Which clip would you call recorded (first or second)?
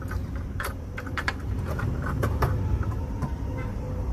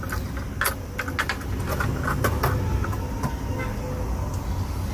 second